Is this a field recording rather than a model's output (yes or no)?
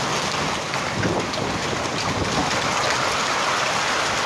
yes